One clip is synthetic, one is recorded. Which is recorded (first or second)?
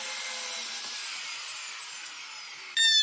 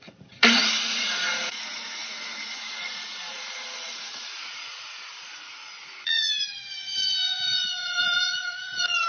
first